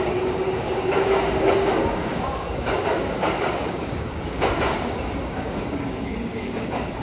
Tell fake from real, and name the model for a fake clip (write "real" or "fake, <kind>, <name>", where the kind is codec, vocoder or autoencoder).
fake, codec, DAC